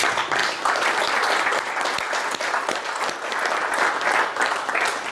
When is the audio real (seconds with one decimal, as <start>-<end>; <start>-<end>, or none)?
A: 0.0-0.4; 3.5-5.1